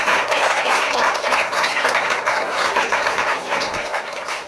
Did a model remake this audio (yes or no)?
yes